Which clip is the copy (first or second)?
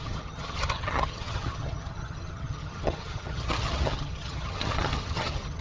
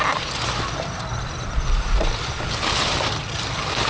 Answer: first